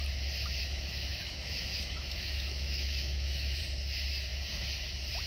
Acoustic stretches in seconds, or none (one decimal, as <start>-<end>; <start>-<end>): 0.0-0.6; 3.6-5.3